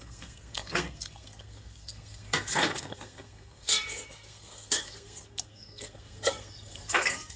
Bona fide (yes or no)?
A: no